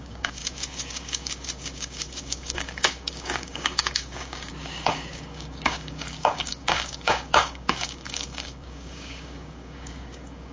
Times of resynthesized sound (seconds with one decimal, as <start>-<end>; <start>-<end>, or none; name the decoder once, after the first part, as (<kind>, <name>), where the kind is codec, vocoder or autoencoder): 0.0-10.5 (codec, DAC)